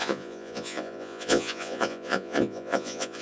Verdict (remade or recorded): remade